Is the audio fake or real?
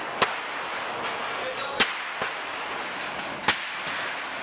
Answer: real